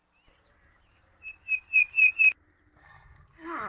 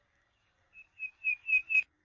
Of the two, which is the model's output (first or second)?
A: second